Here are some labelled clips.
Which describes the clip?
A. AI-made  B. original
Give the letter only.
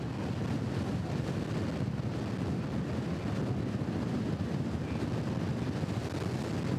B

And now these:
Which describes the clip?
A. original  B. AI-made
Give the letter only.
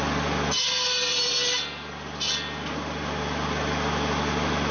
A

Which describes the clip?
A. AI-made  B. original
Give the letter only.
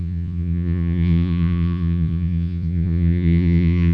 A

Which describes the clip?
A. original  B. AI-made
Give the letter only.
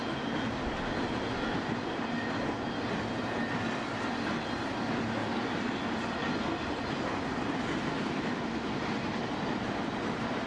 A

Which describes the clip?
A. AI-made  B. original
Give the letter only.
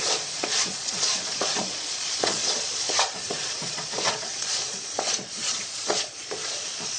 A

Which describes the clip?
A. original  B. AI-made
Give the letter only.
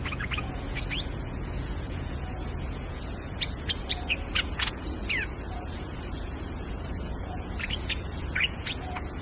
B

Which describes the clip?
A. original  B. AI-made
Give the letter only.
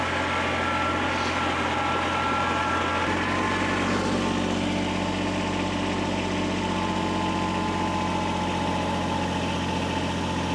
A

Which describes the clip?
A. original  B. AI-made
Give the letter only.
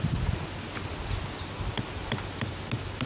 A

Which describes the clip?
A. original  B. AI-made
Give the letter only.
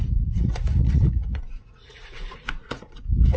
B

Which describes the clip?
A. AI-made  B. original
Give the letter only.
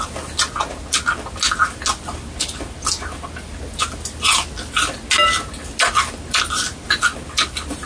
B